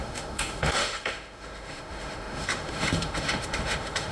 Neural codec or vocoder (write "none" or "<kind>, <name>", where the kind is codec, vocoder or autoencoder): autoencoder, DAC-VAE